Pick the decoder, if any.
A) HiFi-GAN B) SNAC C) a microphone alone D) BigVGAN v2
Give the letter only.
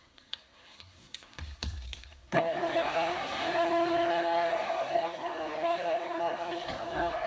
B